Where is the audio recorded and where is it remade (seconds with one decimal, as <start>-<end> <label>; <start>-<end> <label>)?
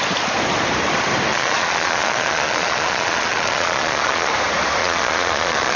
0.0-1.3 recorded; 1.3-4.3 remade; 4.3-4.8 recorded; 4.8-5.8 remade